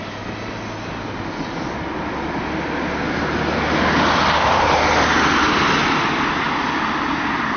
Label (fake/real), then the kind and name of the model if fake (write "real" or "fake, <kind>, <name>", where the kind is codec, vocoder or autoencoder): real